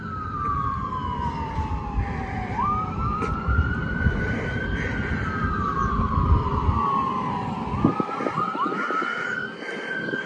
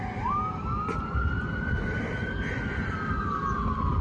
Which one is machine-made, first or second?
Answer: first